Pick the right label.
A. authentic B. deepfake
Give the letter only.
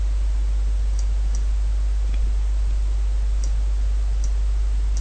A